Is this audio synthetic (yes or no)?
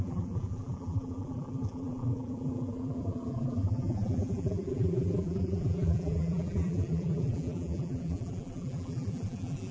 yes